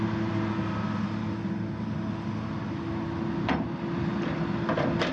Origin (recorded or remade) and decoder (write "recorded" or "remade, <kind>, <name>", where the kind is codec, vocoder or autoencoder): recorded